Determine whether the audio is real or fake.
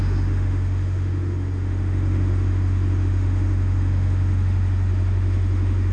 fake